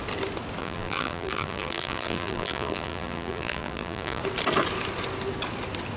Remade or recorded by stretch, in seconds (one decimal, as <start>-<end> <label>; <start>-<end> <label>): 0.0-0.6 recorded; 0.6-4.2 remade; 4.2-6.0 recorded